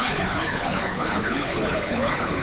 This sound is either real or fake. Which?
fake